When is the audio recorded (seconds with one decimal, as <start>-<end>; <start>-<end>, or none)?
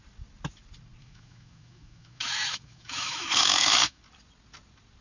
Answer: 0.0-1.0; 4.0-5.0